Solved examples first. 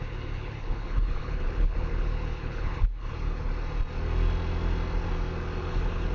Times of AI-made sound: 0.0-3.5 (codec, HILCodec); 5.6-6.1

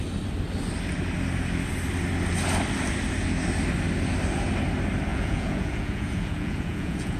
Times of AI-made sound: 5.1-7.2 (vocoder, Vocos)

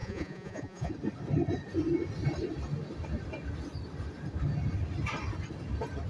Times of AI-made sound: 0.0-0.9 (vocoder, Vocos)

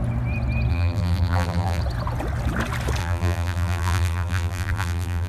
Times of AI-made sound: 0.7-1.8 (vocoder, BigVGAN v2); 3.0-5.3

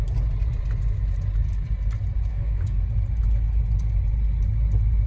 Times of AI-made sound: 2.3-2.8 (codec, SNAC)

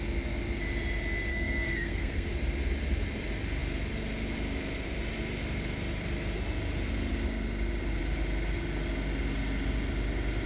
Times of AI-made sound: 1.3-2.3 (codec, SNAC)

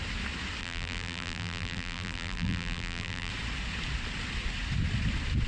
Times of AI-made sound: 0.6-3.3 (vocoder, BigVGAN v2)

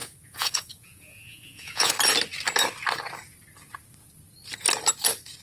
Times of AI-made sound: 0.0-1.9 (vocoder, Vocos)